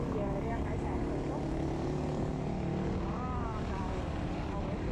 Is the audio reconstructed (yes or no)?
yes